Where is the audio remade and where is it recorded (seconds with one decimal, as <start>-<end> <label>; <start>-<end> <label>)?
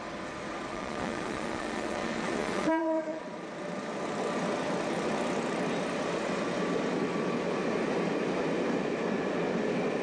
0.0-0.7 recorded; 0.7-3.4 remade; 3.4-10.0 recorded